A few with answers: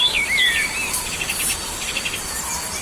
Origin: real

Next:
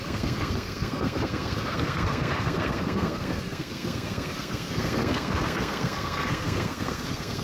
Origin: fake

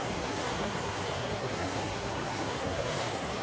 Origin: fake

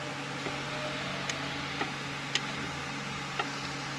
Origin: real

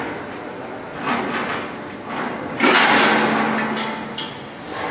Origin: real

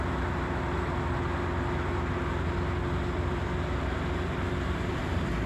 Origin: real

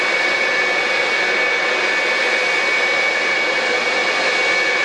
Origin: real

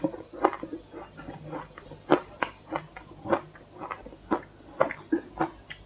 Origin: real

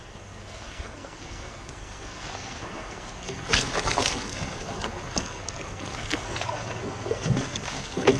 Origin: fake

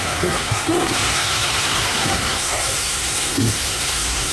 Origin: fake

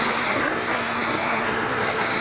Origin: fake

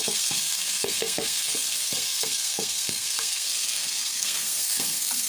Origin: fake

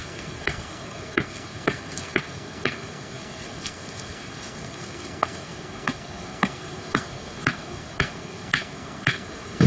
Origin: fake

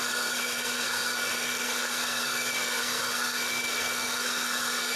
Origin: fake